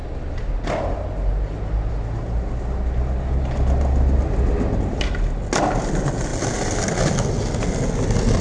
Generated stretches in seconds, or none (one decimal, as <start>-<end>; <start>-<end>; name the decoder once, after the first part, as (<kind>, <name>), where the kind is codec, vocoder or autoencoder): 6.3-7.1 (vocoder, BigVGAN v2)